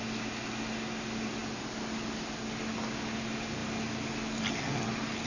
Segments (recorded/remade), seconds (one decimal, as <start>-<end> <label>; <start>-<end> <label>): 0.0-3.6 recorded; 3.6-4.5 remade; 4.5-5.3 recorded